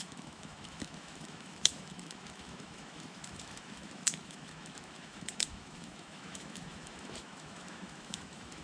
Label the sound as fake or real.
fake